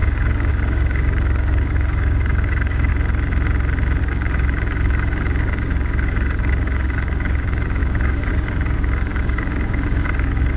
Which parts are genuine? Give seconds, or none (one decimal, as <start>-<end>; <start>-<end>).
2.9-4.0